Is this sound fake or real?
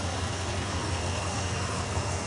fake